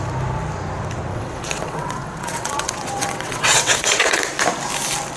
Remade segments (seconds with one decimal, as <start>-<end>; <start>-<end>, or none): 1.1-4.2